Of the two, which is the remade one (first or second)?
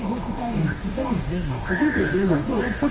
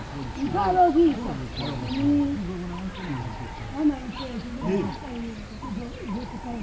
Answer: first